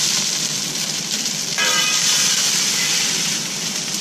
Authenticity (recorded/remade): remade